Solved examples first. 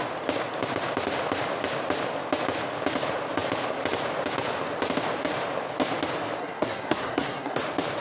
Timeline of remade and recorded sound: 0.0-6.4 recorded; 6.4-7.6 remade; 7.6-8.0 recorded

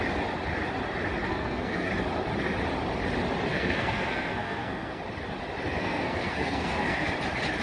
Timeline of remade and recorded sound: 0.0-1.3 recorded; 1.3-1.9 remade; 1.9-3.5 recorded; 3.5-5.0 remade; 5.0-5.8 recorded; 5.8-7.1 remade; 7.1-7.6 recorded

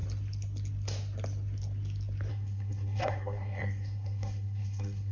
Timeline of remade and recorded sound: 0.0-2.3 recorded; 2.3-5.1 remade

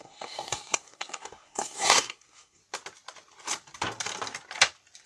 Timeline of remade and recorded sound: 0.0-2.6 remade; 2.6-5.1 recorded

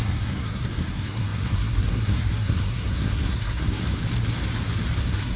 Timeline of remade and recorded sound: 0.0-3.8 remade; 3.8-5.0 recorded; 5.0-5.4 remade

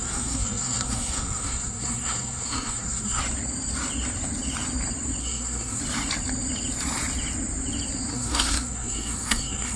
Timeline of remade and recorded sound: 0.0-3.2 remade; 3.2-5.2 recorded; 5.2-5.8 remade; 5.8-8.1 recorded; 8.1-9.8 remade

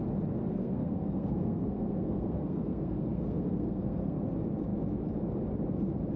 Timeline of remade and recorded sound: 0.0-0.5 recorded; 0.5-4.2 remade; 4.2-6.2 recorded

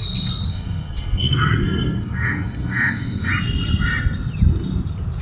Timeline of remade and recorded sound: 0.0-0.5 recorded; 0.5-3.3 remade; 3.3-5.2 recorded